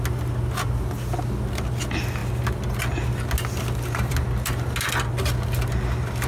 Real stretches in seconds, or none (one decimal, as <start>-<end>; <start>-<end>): 0.0-6.3